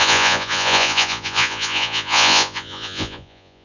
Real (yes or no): no